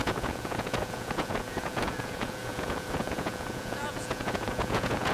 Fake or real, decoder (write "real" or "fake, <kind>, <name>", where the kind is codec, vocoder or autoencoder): fake, vocoder, Vocos